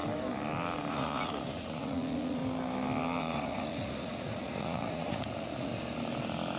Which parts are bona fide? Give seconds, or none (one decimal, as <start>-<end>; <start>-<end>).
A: 0.0-0.9; 2.4-3.2; 5.7-6.6